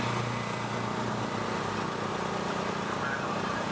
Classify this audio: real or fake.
real